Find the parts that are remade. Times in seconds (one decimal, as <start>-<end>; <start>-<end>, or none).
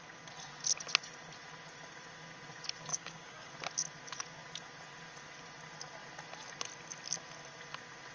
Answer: 2.9-3.5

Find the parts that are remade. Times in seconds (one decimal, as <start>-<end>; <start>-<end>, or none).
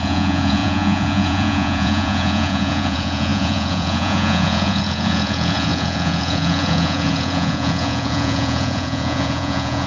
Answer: 0.0-9.9